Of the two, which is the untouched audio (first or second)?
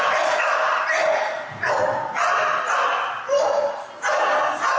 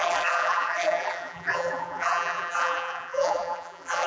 first